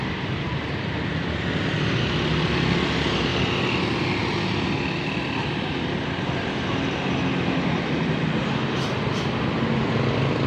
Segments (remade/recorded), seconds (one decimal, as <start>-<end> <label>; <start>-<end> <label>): 0.0-10.5 recorded